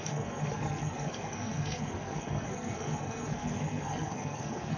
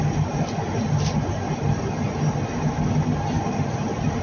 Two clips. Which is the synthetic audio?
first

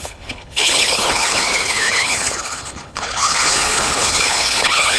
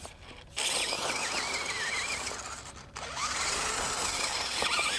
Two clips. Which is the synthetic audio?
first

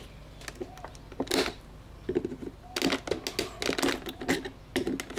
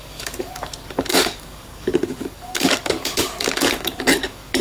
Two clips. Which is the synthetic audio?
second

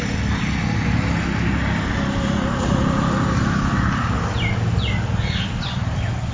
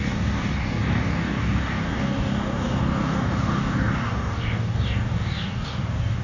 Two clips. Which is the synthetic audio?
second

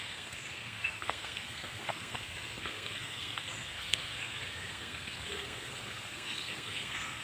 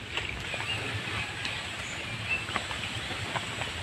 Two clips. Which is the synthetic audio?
first